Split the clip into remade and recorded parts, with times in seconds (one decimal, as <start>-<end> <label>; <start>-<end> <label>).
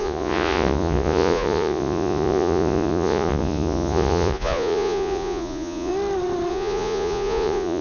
0.0-5.9 remade; 5.9-6.5 recorded; 6.5-7.8 remade